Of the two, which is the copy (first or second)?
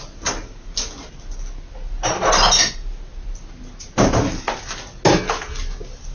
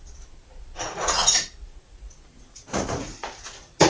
second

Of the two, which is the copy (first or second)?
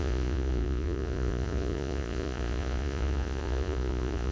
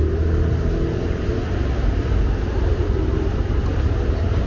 first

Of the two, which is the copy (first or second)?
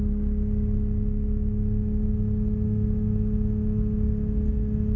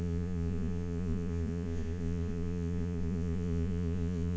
second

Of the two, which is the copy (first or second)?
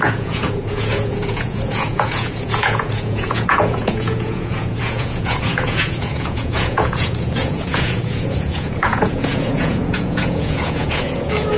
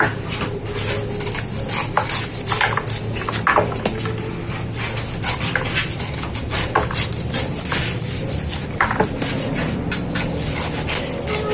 first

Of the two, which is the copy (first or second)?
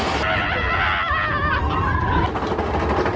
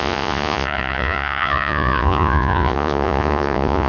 second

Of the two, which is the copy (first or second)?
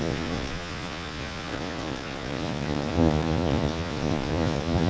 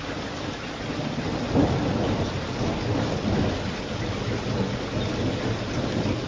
first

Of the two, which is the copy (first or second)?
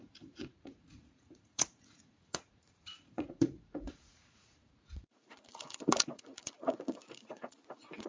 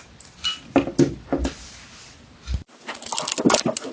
first